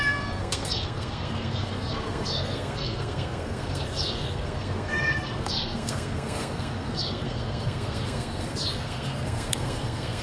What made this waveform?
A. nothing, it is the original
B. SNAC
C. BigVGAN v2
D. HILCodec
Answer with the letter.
B